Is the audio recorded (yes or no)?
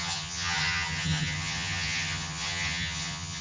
no